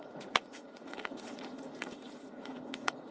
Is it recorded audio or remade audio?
remade